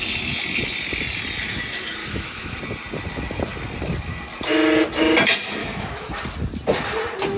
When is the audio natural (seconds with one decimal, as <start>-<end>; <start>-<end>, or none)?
0.0-2.0; 2.6-5.6; 6.1-7.4

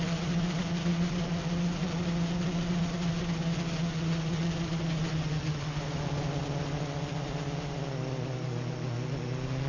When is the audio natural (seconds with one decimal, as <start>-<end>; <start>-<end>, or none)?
0.0-9.7